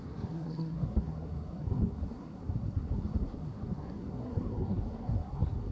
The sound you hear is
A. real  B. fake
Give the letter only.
B